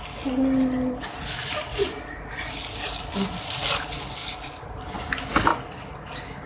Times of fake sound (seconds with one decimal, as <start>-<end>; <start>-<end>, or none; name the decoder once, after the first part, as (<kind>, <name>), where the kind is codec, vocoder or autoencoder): 1.8-2.8 (vocoder, BigVGAN v2)